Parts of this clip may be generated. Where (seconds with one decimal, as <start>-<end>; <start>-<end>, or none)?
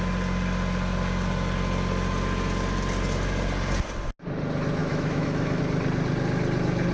4.8-5.6